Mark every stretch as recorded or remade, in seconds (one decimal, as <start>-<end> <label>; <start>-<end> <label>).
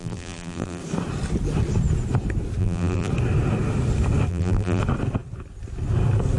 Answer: 0.0-0.8 remade; 0.8-2.6 recorded; 2.6-3.1 remade; 3.1-4.3 recorded; 4.3-4.8 remade; 4.8-6.4 recorded